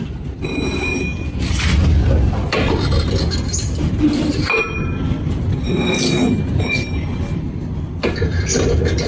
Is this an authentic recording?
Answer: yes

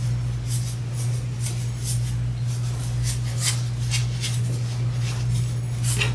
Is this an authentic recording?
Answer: yes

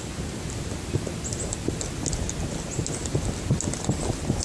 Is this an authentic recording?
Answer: yes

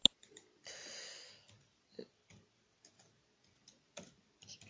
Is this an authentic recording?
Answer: yes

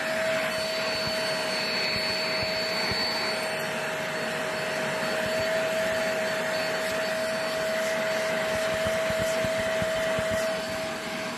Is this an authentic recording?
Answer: yes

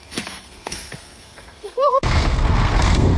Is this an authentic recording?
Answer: no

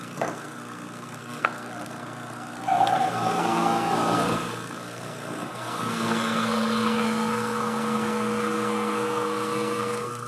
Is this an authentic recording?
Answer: no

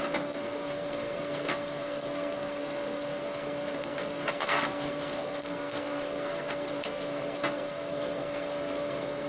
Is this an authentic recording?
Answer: no